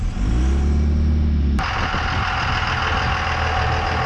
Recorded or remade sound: recorded